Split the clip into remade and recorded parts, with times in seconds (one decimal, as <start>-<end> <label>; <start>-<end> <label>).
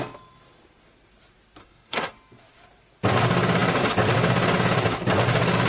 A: 0.0-1.6 recorded; 1.6-2.1 remade; 2.1-5.7 recorded